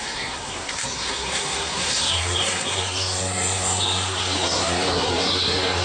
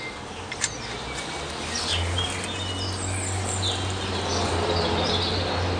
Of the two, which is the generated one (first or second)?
first